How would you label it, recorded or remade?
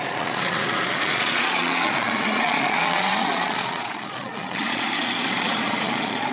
remade